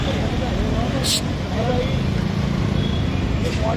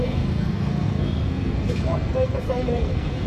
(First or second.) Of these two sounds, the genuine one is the first